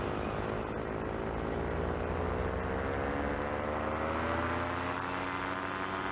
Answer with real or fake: real